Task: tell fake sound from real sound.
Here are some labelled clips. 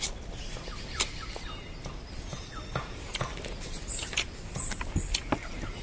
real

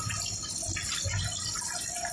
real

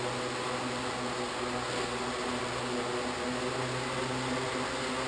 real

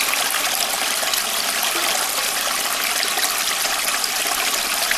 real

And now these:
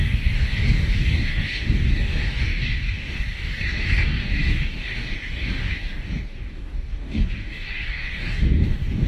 fake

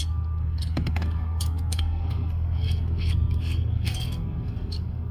fake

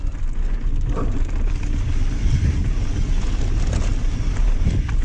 real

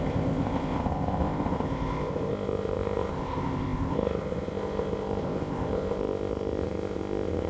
fake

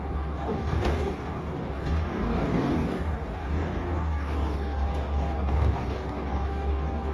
fake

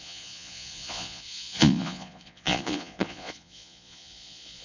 fake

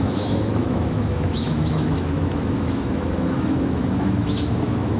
fake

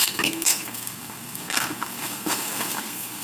fake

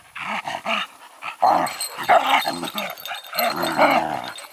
real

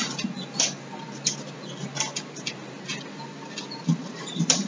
real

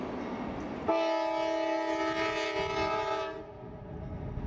real